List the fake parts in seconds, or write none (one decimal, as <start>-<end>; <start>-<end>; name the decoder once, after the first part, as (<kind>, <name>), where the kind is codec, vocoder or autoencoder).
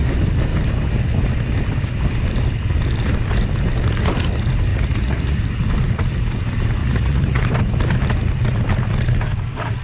4.7-5.4 (vocoder, Vocos); 6.8-7.4